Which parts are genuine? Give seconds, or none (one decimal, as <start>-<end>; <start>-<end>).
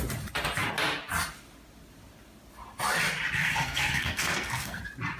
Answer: 0.0-3.4; 4.8-5.2